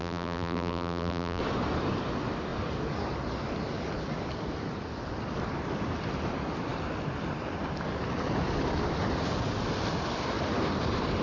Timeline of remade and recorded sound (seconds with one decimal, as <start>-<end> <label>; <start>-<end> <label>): 0.0-1.4 remade; 1.4-11.2 recorded